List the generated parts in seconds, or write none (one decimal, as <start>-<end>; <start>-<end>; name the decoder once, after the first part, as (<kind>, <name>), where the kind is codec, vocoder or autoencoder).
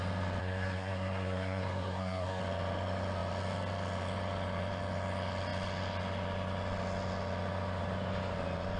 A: 0.4-2.4 (codec, SNAC)